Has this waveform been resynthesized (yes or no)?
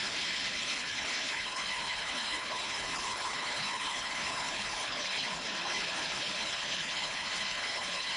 yes